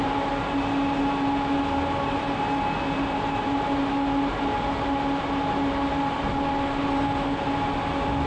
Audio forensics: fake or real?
real